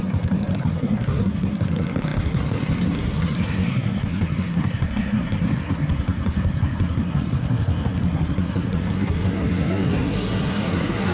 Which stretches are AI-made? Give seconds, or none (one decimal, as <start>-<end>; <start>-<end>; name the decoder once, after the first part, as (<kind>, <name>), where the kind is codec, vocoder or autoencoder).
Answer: 0.0-11.1 (codec, SNAC)